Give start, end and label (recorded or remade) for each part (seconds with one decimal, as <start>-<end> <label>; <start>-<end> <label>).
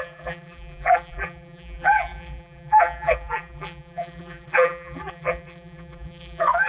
0.0-6.7 remade